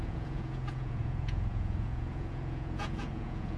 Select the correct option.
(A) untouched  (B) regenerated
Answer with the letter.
B